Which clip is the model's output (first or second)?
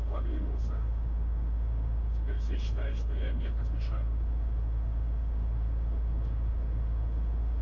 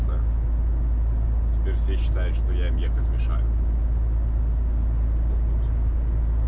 first